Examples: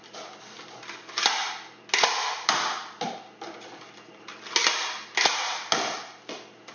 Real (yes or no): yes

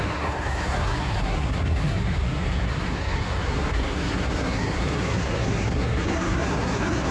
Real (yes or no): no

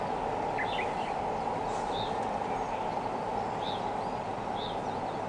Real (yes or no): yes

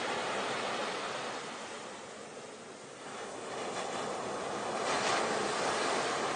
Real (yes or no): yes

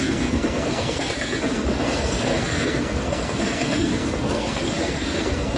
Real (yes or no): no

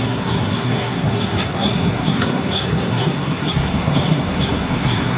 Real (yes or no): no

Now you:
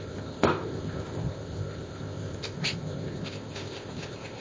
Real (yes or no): no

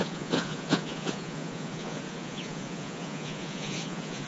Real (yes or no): no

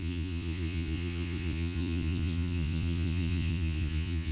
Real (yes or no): no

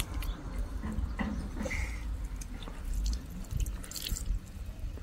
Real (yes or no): yes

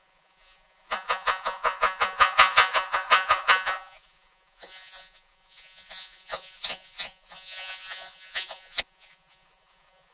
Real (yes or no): no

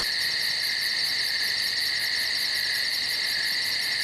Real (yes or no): yes